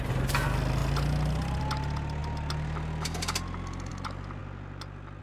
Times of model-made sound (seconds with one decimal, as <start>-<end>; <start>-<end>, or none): none